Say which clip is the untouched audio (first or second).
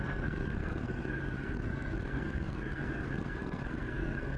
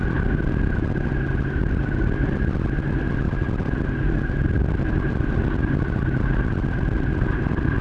second